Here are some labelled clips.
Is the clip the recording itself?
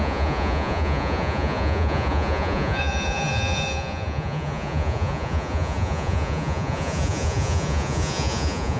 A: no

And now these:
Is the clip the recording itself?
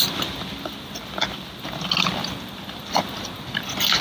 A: yes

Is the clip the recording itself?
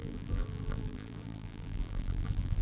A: no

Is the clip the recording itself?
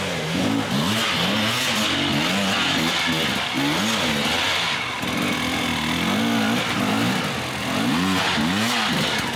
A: yes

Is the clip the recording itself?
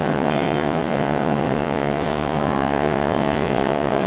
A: no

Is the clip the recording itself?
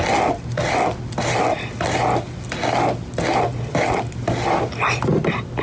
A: yes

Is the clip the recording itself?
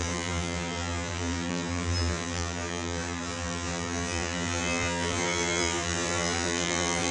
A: no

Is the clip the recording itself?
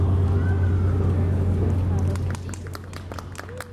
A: yes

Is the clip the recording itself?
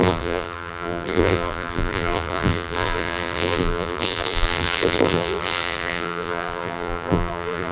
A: no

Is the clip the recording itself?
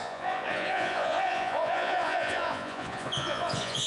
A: no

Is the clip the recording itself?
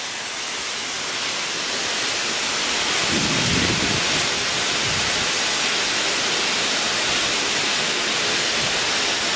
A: yes